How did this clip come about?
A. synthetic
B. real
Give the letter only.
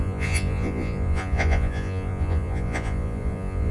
A